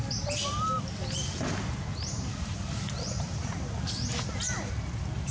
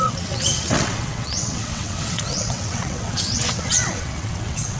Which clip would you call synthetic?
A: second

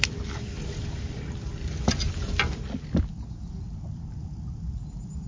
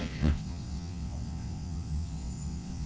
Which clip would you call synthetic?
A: second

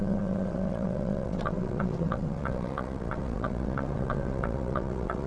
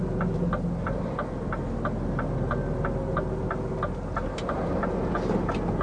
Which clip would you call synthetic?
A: first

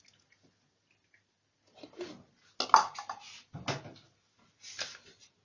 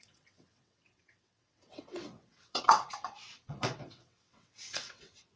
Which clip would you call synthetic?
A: second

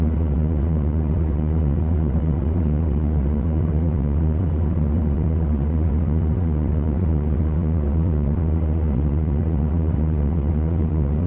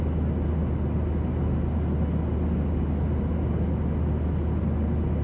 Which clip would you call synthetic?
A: first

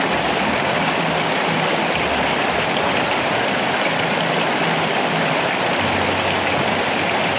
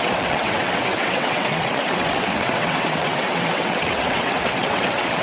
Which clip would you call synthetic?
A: second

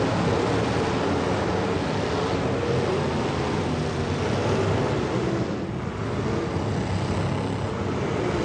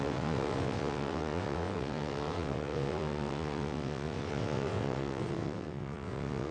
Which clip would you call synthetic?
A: second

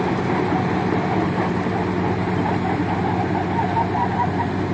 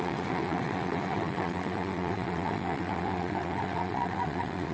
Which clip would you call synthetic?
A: second